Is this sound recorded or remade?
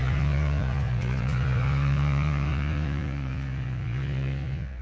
remade